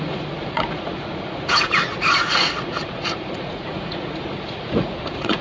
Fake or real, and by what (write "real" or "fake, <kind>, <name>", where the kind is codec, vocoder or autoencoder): fake, vocoder, Vocos